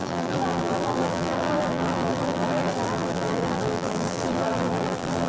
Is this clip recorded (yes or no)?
no